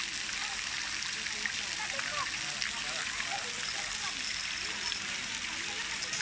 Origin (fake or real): real